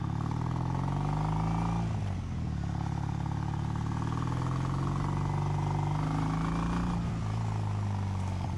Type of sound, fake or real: real